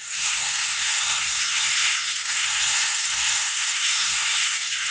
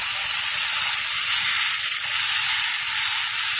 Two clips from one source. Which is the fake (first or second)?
first